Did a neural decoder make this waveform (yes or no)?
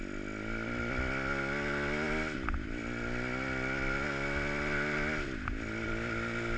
no